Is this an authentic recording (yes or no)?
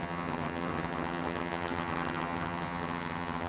no